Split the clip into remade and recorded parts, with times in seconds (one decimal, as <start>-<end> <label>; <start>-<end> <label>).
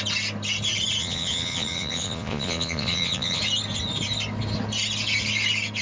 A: 0.0-1.0 recorded; 1.0-3.4 remade; 3.4-5.8 recorded